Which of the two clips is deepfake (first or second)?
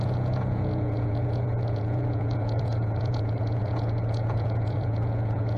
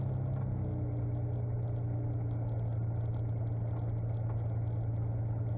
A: first